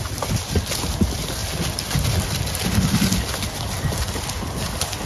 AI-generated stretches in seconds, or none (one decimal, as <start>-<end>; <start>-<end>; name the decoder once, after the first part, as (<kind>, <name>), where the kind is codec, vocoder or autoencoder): none